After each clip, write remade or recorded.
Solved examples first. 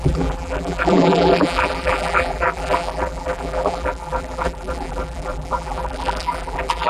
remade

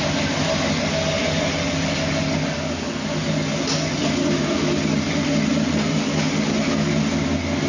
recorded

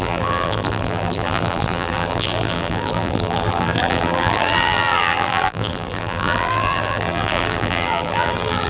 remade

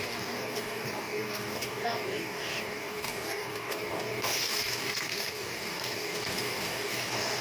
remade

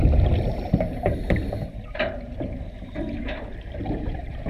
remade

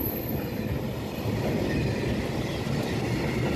recorded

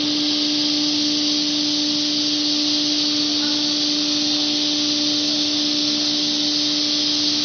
recorded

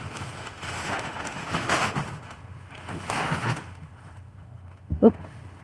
remade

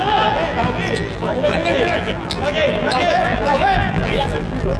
remade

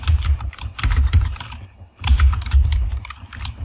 remade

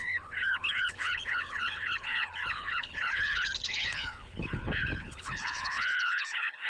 remade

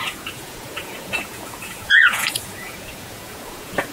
remade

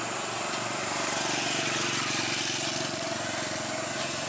recorded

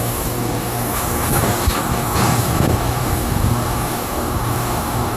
remade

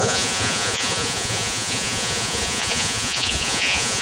remade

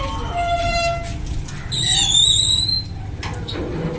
recorded